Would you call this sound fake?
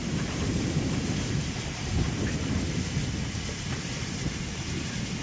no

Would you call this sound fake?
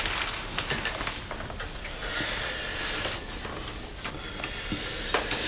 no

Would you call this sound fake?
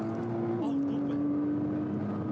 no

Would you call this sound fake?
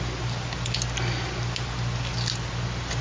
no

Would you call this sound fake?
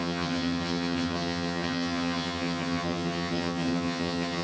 yes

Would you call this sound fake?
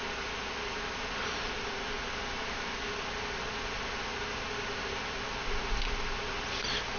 no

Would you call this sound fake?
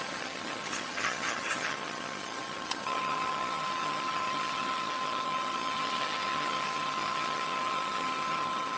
yes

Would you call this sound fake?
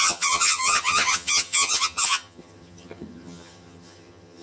yes